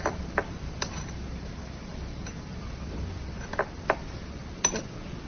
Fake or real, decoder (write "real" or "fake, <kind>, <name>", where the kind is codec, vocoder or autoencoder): real